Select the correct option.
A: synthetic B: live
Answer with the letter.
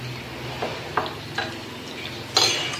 B